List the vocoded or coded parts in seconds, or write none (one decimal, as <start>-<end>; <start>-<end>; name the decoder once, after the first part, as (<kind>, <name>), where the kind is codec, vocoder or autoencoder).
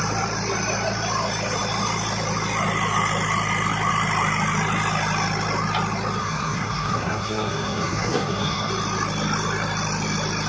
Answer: 6.2-8.7 (codec, SNAC)